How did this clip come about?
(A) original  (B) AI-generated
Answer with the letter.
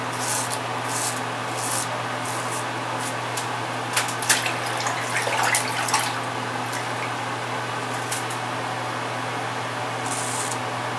A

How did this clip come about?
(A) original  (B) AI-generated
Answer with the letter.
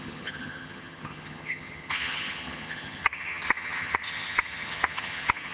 B